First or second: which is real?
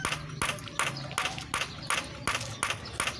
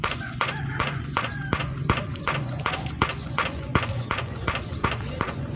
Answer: first